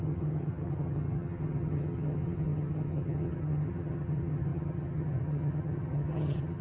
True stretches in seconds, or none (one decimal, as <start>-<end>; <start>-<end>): none